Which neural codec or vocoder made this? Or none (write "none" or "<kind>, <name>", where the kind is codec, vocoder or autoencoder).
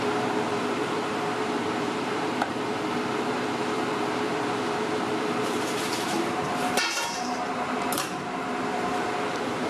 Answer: vocoder, BigVGAN v2